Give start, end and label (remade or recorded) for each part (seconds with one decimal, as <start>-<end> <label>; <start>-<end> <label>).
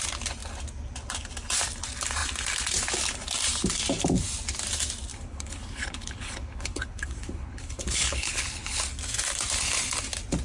0.0-5.1 recorded; 5.1-8.8 remade; 8.8-10.4 recorded